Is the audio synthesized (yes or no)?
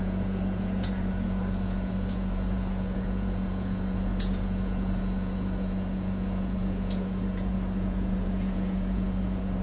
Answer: yes